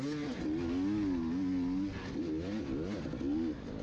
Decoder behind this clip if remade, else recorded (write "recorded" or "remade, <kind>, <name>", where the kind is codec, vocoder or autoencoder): recorded